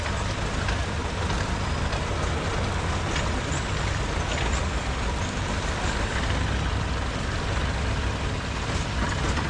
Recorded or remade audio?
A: recorded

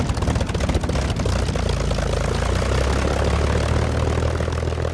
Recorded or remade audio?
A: recorded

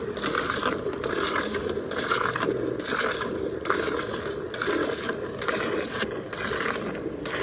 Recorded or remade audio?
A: recorded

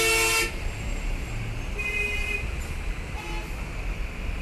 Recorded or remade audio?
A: recorded